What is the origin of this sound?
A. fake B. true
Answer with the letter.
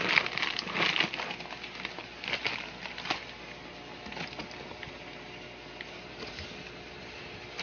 B